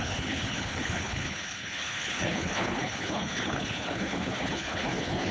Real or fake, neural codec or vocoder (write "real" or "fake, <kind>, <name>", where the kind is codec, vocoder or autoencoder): fake, codec, HILCodec